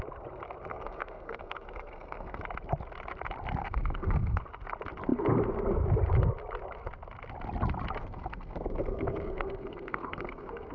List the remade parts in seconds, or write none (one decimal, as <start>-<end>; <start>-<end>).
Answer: 0.7-2.4; 3.6-4.4; 8.0-10.7